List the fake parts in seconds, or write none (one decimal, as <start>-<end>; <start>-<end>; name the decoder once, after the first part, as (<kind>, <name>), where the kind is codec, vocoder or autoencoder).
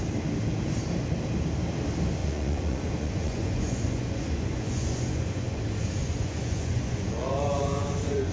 2.2-5.6 (vocoder, Vocos); 6.0-8.3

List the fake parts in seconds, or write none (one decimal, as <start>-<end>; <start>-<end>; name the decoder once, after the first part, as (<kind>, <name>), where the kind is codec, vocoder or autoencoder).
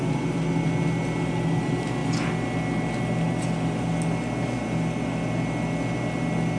none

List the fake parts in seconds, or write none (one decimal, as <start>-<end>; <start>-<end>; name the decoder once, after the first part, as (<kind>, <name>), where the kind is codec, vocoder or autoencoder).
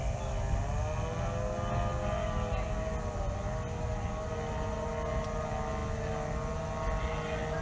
none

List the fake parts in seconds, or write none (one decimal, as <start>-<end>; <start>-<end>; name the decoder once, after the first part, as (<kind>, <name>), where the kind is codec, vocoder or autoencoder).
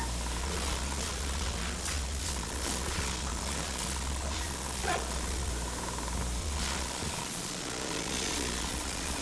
0.4-5.5 (vocoder, Vocos); 6.4-9.2